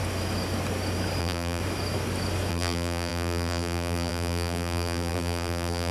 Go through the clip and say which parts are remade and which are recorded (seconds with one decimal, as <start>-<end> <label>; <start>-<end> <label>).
0.0-1.2 recorded; 1.2-1.6 remade; 1.6-2.5 recorded; 2.5-5.9 remade